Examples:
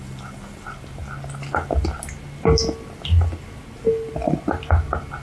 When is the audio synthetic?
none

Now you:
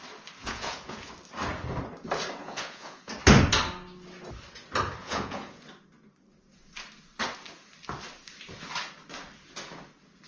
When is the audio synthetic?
0.4-1.1 (vocoder, Vocos); 2.4-3.1; 5.0-5.6